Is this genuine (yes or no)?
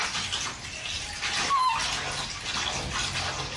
yes